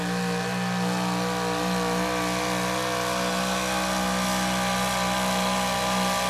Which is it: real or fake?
real